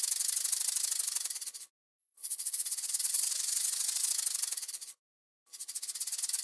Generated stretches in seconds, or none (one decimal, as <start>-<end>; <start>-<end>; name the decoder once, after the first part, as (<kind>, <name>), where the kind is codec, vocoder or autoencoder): 2.0-4.1 (vocoder, WaveNeXt)